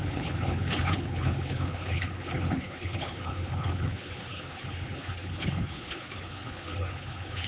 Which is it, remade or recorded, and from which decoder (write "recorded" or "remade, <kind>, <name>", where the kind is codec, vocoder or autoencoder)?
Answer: remade, codec, HILCodec